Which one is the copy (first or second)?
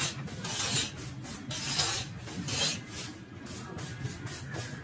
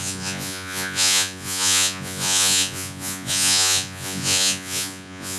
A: second